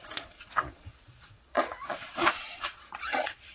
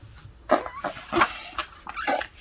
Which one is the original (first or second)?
second